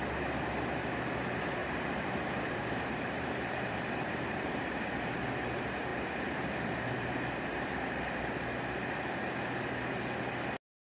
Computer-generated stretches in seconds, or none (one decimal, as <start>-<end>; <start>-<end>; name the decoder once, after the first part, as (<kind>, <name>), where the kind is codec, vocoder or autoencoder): 1.6-4.7 (vocoder, BigVGAN v2); 5.9-8.2